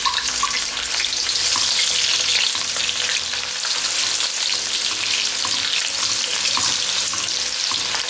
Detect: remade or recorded recorded